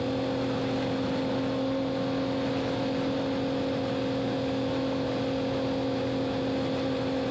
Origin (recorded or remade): recorded